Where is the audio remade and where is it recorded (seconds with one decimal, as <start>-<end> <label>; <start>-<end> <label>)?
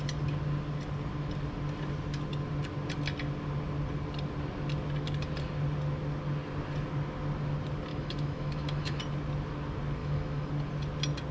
0.0-7.9 recorded; 7.9-9.0 remade; 9.0-10.0 recorded; 10.0-10.5 remade; 10.5-11.3 recorded